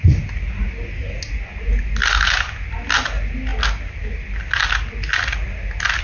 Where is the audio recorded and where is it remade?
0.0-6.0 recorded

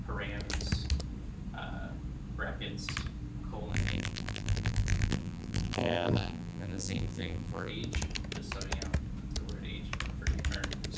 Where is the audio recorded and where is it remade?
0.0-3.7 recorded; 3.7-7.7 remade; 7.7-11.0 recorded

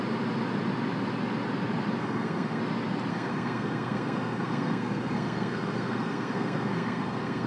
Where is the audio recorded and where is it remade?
0.0-2.0 recorded; 2.0-2.6 remade; 2.6-3.1 recorded; 3.1-7.5 remade

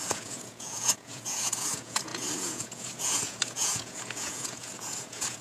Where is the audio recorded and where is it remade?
0.0-5.4 remade

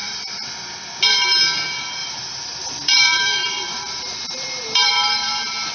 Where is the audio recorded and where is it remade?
0.0-0.5 remade; 0.5-2.0 recorded; 2.0-5.7 remade